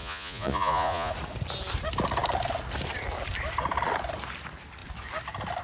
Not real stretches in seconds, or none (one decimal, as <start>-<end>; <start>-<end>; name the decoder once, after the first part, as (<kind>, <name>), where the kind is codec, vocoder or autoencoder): 0.0-1.1 (vocoder, Vocos)